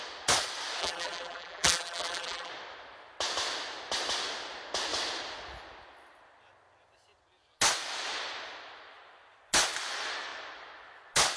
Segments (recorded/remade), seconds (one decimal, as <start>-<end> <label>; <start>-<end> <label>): 0.0-0.8 recorded; 0.8-2.5 remade; 2.5-11.4 recorded